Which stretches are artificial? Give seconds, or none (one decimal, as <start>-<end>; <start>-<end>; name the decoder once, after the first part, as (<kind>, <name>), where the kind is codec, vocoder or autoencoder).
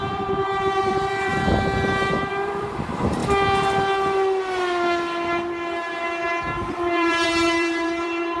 0.0-1.3 (vocoder, BigVGAN v2); 2.3-3.2; 6.7-8.4